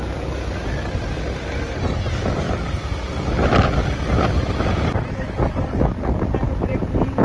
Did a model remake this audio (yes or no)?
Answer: no